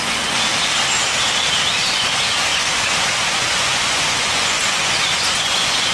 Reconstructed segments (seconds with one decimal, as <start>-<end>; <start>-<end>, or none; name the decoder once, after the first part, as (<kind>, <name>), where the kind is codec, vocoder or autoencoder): 0.0-0.5 (vocoder, Vocos); 1.7-5.9